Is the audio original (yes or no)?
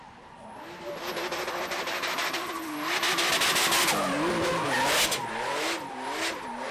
yes